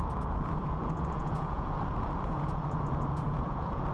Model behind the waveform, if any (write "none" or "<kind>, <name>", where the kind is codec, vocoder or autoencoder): vocoder, Vocos